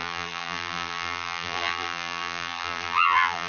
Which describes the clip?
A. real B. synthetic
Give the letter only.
B